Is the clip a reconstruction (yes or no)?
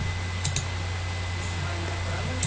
no